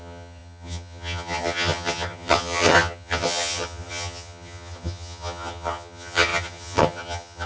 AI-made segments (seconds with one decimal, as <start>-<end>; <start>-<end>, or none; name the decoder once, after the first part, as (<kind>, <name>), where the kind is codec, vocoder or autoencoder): 0.0-7.5 (vocoder, HiFi-GAN)